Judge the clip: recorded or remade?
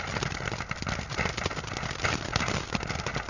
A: recorded